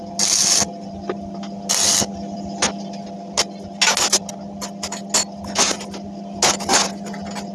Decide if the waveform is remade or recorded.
recorded